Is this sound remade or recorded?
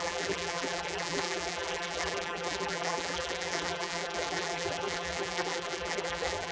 remade